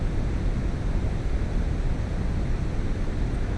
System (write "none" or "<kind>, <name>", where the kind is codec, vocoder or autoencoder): none